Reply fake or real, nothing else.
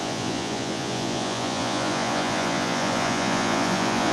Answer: fake